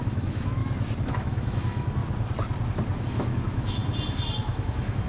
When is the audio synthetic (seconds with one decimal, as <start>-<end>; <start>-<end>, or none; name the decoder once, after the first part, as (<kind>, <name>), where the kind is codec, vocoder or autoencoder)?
0.0-0.6 (autoencoder, DAC-VAE); 1.1-2.0; 3.0-3.8; 4.4-5.1